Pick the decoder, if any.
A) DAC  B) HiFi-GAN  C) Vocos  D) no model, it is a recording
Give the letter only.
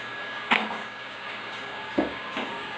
A